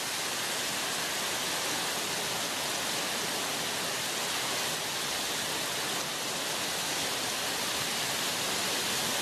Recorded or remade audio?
recorded